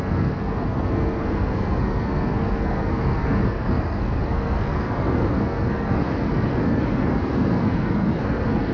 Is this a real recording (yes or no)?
no